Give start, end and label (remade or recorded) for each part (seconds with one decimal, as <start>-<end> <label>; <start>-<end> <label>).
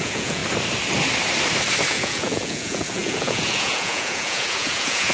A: 0.0-0.4 remade; 0.4-1.9 recorded; 1.9-5.1 remade